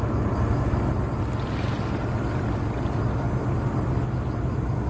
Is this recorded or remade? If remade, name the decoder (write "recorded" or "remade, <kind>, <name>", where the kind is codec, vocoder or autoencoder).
recorded